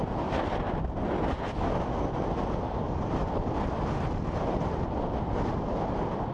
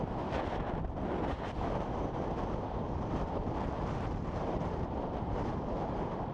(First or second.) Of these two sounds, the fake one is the second